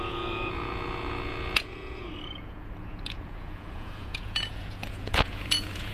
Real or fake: fake